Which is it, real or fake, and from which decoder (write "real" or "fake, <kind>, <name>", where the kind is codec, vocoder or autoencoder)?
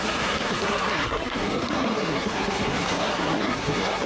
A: fake, codec, SNAC